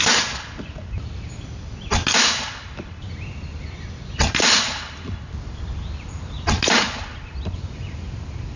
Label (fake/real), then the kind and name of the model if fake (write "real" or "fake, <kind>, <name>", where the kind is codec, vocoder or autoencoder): real